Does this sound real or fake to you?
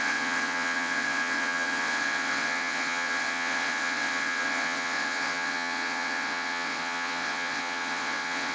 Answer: fake